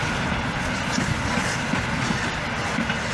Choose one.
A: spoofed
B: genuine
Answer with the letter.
B